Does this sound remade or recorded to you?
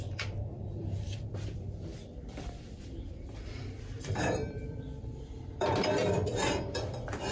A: remade